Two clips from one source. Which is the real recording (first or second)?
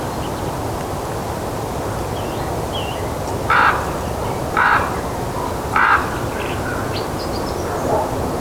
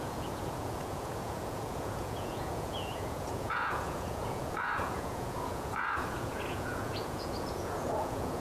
first